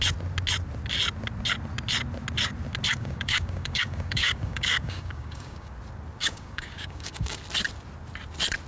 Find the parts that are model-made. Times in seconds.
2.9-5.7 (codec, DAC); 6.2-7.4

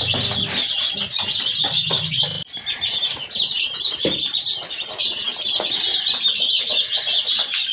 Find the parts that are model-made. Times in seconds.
none

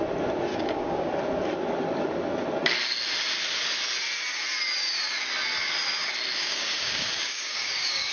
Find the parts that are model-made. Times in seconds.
0.5-1.1 (codec, DAC); 6.4-8.1

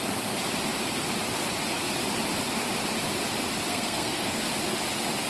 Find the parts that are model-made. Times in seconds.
3.7-4.4 (codec, SNAC)

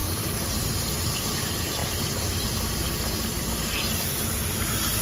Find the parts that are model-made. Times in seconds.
0.0-0.6 (vocoder, BigVGAN v2)

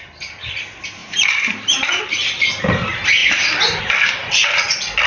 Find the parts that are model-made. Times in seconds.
1.0-2.0 (vocoder, BigVGAN v2); 3.2-3.8

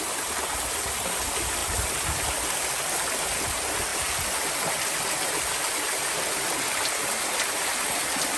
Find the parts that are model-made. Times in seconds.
none

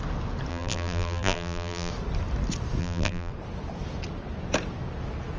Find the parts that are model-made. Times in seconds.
0.5-1.9 (vocoder, BigVGAN v2); 2.8-3.3